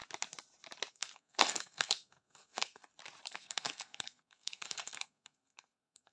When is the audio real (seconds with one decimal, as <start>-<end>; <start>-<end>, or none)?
0.0-0.9; 2.8-3.3